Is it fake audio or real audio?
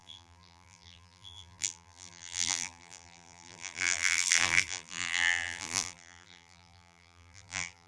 fake